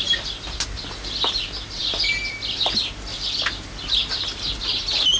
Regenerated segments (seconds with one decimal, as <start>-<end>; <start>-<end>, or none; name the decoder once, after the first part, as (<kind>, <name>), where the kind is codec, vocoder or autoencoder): none